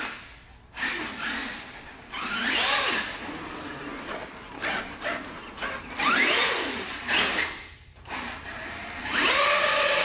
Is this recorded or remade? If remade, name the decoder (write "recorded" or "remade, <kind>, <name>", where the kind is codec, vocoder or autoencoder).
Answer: recorded